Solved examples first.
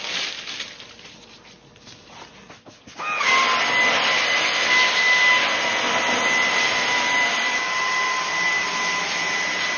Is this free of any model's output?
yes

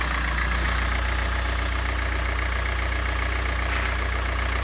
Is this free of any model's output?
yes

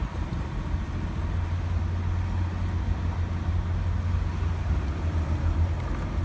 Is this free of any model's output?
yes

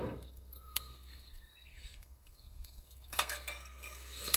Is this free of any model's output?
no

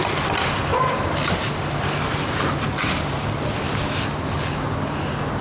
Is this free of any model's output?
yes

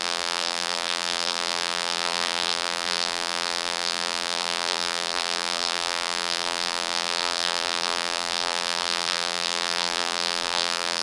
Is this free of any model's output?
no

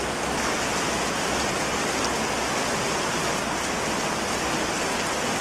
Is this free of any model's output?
yes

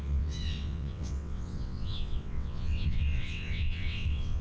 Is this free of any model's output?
no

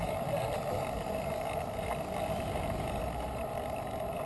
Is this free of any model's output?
yes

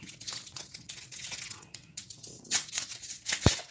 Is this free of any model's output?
no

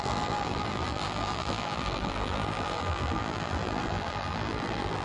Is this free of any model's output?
no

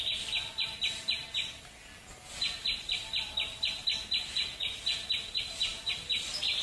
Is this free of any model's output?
yes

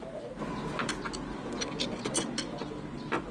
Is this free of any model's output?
yes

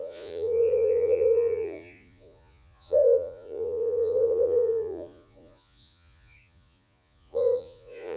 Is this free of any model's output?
no